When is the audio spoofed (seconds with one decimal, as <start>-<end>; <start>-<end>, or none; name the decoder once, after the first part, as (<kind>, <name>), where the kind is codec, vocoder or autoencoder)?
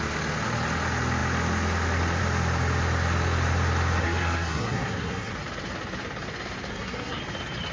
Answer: 4.0-5.3 (codec, SNAC); 6.7-7.2